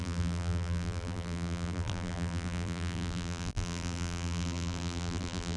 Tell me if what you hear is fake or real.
fake